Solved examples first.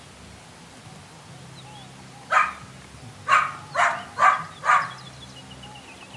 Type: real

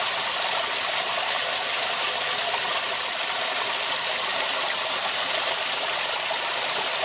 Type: real